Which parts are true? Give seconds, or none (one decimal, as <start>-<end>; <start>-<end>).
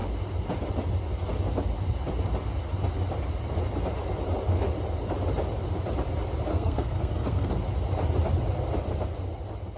0.0-6.5; 7.5-9.8